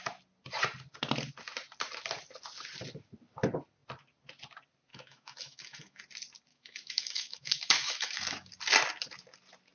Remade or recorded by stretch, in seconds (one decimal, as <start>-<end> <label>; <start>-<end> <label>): 0.0-4.9 recorded; 4.9-6.0 remade; 6.0-6.5 recorded; 6.5-8.5 remade; 8.5-9.7 recorded